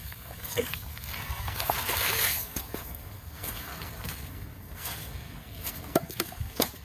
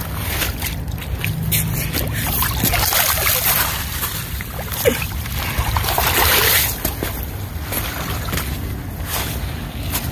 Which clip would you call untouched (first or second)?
second